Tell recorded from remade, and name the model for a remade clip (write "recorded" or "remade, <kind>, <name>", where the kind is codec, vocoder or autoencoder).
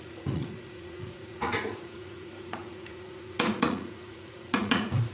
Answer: remade, vocoder, Vocos